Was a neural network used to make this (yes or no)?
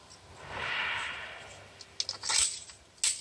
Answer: no